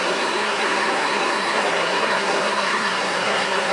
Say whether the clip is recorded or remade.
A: remade